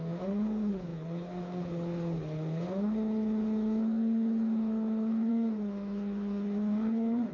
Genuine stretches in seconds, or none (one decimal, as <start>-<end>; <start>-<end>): none